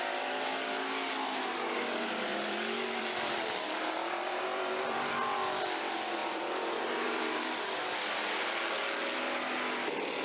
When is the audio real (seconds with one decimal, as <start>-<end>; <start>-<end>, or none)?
0.0-2.3; 5.6-6.2; 7.6-10.2